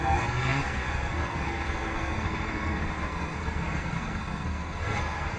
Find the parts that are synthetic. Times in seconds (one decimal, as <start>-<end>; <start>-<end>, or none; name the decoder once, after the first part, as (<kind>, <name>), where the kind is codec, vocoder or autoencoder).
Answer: 0.0-5.4 (codec, SNAC)